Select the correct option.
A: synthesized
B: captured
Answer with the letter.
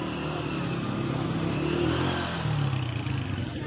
B